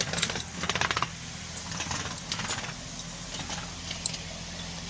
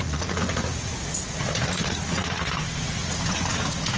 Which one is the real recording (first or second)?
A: first